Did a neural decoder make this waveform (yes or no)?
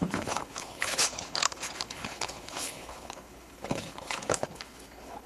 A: yes